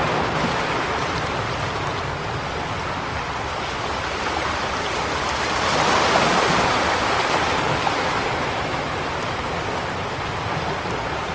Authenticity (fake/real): fake